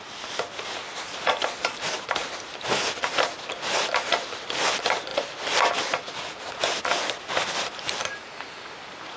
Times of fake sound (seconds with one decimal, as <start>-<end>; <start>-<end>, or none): 8.0-9.2